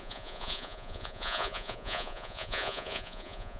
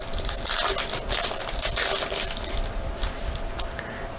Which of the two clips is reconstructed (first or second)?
first